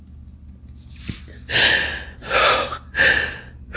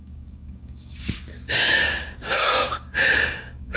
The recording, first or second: first